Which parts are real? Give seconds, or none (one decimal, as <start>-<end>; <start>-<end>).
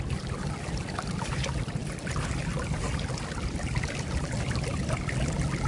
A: 0.0-5.7